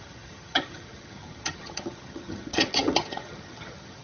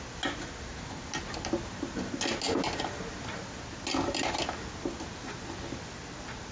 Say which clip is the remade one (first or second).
first